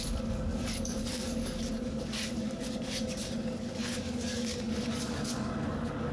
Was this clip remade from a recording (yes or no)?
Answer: yes